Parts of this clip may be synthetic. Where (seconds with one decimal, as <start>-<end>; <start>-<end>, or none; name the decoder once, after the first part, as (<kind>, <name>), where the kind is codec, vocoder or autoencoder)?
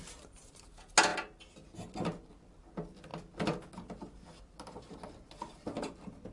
none